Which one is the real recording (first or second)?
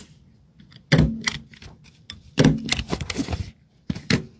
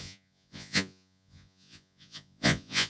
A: first